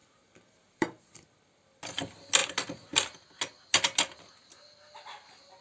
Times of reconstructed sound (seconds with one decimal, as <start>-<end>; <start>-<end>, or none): 0.0-1.0